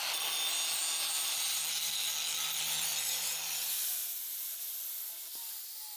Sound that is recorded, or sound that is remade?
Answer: recorded